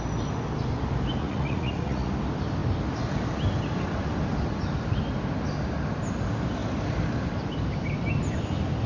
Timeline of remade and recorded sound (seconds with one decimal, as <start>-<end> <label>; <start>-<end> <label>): 0.0-1.2 recorded; 1.2-2.1 remade; 2.1-8.9 recorded

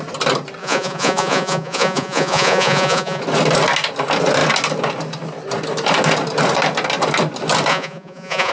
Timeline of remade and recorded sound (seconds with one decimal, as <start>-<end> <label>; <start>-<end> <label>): 0.0-0.6 recorded; 0.6-3.2 remade; 3.2-7.7 recorded; 7.7-8.5 remade

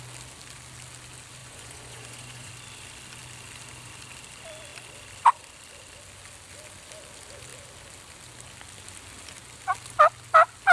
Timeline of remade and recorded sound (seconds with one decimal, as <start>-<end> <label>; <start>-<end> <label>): 0.0-1.4 recorded; 1.4-2.5 remade; 2.5-10.7 recorded